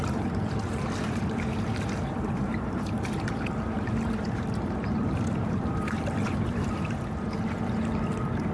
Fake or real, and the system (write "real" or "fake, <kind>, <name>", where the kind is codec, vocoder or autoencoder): fake, vocoder, BigVGAN v2